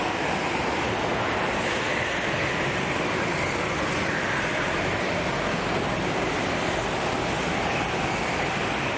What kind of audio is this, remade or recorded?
recorded